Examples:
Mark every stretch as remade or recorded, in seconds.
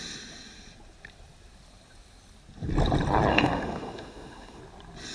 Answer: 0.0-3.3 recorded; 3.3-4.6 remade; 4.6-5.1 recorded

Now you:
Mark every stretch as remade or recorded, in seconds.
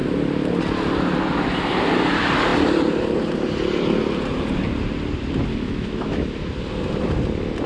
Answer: 0.0-5.5 recorded; 5.5-6.5 remade; 6.5-7.7 recorded